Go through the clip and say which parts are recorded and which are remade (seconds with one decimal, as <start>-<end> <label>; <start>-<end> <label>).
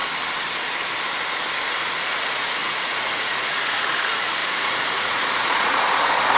0.0-2.0 recorded; 2.0-6.4 remade